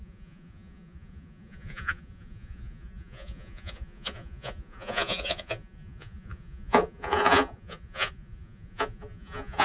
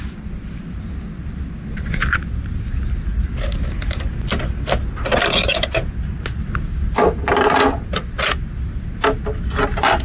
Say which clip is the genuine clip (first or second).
second